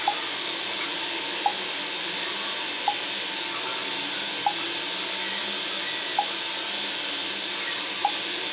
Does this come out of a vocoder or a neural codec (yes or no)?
no